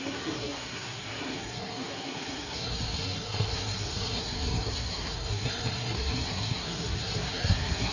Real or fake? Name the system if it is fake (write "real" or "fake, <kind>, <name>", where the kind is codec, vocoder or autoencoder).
fake, codec, SNAC